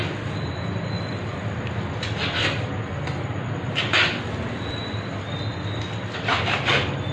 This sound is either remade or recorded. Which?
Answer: recorded